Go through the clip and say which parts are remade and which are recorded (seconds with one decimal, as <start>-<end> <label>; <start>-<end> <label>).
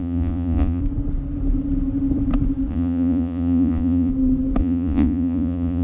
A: 0.0-0.8 remade; 0.8-2.7 recorded; 2.7-4.1 remade; 4.1-4.6 recorded; 4.6-5.8 remade